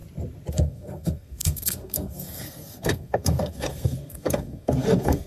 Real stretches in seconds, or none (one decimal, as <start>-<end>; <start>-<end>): 0.0-0.5